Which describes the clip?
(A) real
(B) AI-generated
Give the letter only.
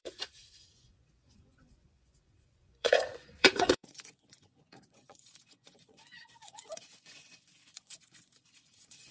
B